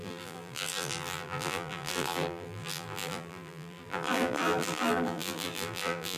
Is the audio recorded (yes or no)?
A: no